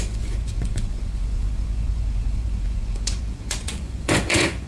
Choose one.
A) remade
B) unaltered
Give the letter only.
A